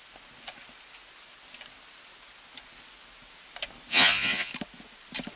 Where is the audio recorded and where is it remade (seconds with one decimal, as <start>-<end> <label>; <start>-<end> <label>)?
0.0-3.9 recorded; 3.9-4.5 remade; 4.5-5.4 recorded